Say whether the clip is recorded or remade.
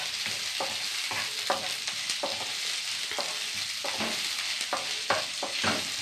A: recorded